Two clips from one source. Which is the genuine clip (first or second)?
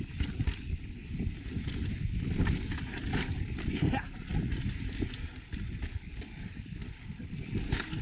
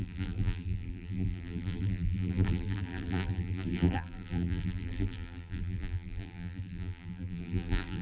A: first